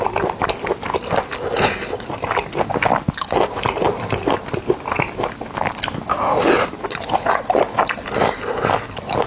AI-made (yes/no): no